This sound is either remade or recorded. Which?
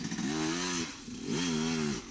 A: recorded